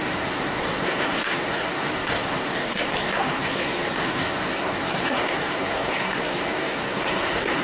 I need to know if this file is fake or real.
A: fake